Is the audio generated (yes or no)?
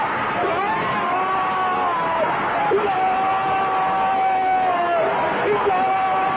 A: no